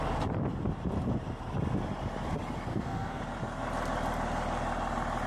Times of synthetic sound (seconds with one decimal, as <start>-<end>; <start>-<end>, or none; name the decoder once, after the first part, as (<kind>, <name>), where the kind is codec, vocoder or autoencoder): 2.7-3.2 (codec, SNAC)